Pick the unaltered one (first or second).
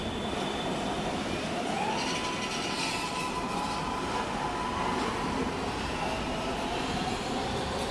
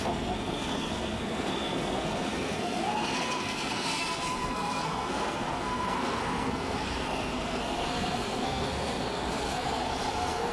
first